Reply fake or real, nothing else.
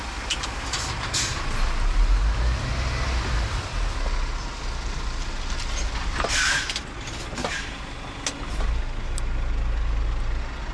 real